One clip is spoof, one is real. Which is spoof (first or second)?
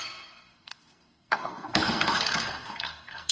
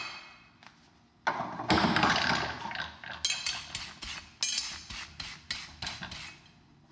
first